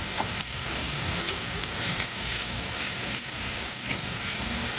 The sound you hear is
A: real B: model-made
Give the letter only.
B